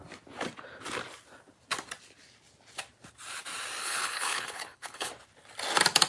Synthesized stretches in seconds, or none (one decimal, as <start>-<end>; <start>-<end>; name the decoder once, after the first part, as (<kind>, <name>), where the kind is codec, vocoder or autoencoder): 3.8-5.1 (codec, HILCodec)